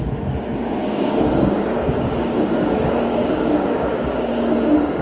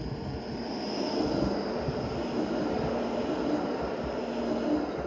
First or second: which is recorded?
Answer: second